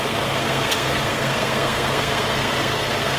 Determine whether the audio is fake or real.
fake